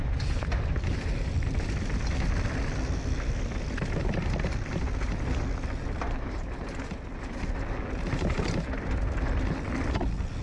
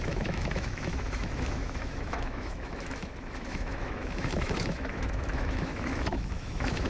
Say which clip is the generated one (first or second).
second